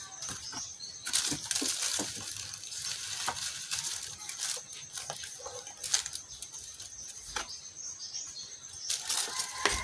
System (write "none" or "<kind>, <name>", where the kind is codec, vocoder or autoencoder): none